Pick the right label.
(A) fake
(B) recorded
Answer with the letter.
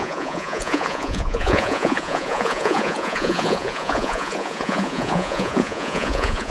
A